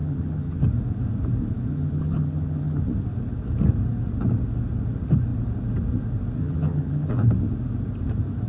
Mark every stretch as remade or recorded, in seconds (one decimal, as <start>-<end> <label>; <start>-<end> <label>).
0.0-0.6 remade; 0.6-1.7 recorded; 1.7-2.8 remade; 2.8-6.4 recorded; 6.4-7.1 remade; 7.1-8.5 recorded